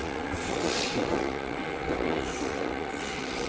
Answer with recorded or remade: remade